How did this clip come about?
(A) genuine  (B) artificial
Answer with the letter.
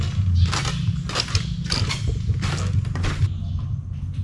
A